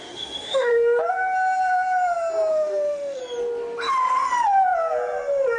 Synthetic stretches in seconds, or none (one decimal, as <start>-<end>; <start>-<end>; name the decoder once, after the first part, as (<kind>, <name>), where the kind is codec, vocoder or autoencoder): 0.0-0.7 (autoencoder, DAC-VAE); 2.5-3.2